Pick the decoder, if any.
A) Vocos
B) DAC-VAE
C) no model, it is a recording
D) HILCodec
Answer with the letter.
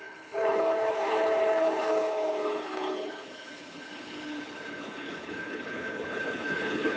D